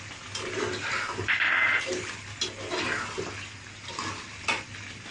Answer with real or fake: real